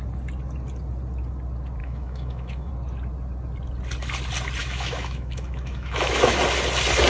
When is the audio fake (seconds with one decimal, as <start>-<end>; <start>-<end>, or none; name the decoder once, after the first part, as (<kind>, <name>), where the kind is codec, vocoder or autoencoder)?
1.8-2.7 (autoencoder, DAC-VAE); 4.6-6.4